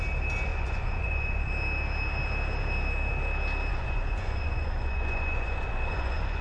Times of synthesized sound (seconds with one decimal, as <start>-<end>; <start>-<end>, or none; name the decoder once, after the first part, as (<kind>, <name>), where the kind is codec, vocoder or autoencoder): 0.5-1.5 (vocoder, Vocos); 3.7-6.4